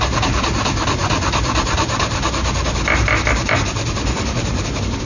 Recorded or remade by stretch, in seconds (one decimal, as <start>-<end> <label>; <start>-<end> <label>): 0.0-5.0 recorded